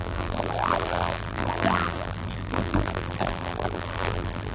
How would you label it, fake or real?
fake